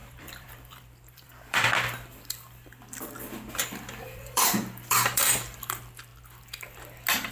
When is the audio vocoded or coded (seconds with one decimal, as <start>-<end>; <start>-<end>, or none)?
0.0-6.1